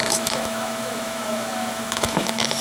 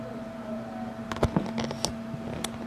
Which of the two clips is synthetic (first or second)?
first